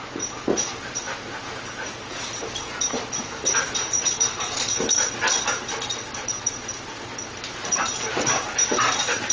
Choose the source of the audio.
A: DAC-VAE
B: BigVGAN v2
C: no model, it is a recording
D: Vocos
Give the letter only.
B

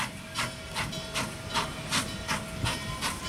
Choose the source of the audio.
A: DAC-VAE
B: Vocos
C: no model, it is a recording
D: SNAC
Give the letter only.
C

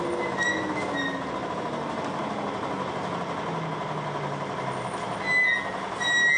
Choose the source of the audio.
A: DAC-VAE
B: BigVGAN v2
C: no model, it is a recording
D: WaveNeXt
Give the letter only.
C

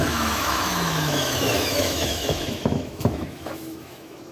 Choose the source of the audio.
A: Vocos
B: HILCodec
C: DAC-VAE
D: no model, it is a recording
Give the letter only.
C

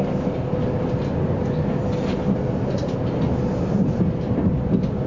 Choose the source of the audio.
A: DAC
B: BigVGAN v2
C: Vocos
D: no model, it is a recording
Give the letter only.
D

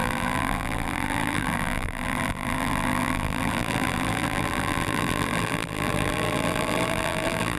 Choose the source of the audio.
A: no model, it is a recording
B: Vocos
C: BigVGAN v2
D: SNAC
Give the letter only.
C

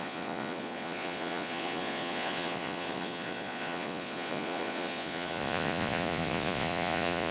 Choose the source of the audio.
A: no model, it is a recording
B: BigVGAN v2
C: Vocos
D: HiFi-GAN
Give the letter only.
C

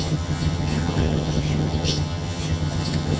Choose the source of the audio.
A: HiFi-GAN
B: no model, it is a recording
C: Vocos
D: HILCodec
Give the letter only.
A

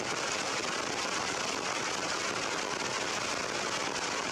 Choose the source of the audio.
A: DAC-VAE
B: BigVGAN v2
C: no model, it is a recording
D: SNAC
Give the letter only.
C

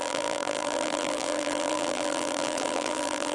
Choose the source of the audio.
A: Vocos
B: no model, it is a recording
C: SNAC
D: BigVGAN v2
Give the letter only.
D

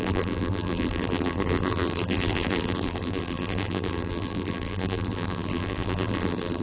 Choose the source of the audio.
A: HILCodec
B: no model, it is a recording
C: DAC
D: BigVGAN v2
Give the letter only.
D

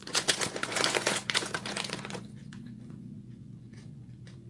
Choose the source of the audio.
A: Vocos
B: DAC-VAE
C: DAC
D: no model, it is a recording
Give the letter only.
A